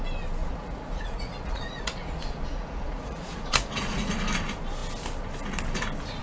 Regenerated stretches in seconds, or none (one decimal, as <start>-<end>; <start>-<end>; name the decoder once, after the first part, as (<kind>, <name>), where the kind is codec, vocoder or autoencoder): 0.4-4.1 (vocoder, Vocos)